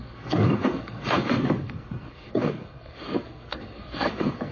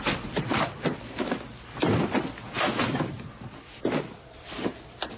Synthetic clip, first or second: first